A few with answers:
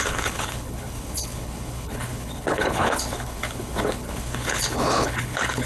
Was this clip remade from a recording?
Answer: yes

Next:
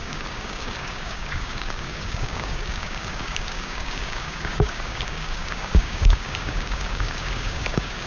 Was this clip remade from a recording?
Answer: yes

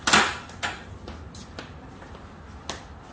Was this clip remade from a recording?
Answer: no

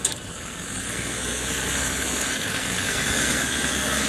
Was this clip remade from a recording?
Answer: yes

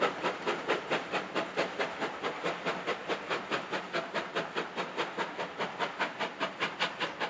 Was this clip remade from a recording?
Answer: no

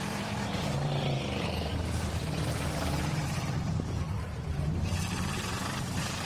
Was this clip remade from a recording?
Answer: yes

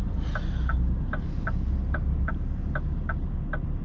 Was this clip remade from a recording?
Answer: no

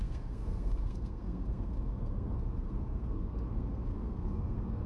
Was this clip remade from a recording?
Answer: yes